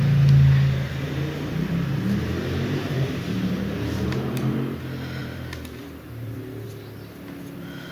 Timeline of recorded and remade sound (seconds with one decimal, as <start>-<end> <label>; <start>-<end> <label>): 0.0-1.9 recorded; 1.9-4.8 remade; 4.8-5.2 recorded; 5.2-6.7 remade; 6.7-7.9 recorded